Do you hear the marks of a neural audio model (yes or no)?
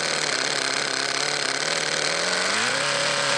no